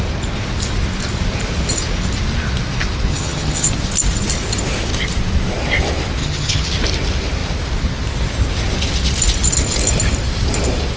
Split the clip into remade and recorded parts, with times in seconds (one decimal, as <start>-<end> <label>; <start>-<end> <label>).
0.0-3.1 recorded; 3.1-3.7 remade; 3.7-6.2 recorded; 6.2-6.7 remade; 6.7-11.0 recorded